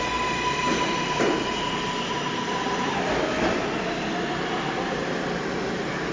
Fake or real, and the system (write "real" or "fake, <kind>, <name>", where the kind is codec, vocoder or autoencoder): real